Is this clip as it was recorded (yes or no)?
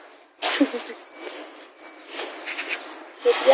yes